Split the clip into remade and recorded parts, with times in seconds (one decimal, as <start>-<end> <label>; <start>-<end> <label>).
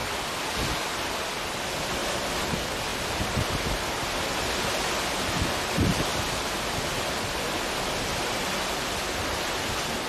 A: 0.0-10.1 recorded